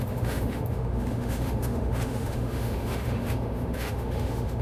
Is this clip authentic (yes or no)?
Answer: no